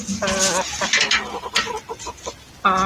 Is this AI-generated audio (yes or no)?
no